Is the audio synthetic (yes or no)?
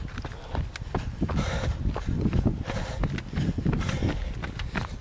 no